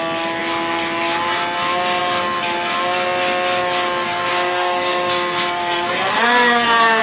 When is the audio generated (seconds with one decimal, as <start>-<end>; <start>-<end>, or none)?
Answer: 4.3-7.0